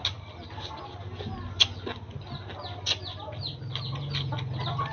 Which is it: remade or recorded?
recorded